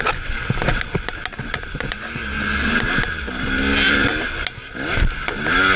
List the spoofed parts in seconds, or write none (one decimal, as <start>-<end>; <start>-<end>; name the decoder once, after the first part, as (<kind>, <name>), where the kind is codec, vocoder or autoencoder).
1.3-2.2 (vocoder, Vocos)